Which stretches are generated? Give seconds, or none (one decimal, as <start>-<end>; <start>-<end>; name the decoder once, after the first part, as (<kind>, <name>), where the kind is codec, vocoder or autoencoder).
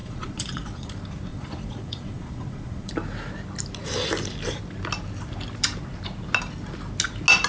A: 0.0-0.9 (vocoder, Vocos); 1.3-2.9